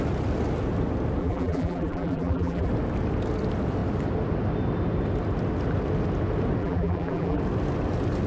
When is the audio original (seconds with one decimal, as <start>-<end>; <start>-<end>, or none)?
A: 0.0-1.2; 2.7-6.6; 7.4-8.3